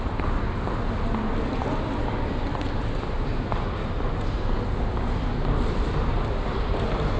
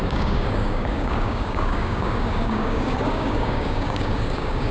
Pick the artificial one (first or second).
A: second